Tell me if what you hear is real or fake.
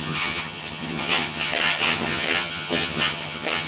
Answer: fake